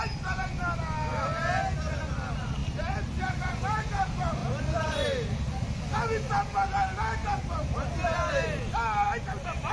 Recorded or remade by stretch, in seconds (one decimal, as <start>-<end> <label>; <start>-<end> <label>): 0.0-9.7 recorded